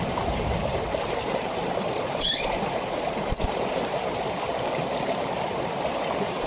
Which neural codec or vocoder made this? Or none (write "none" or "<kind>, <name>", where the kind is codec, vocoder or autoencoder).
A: vocoder, BigVGAN v2